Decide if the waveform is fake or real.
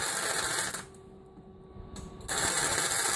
real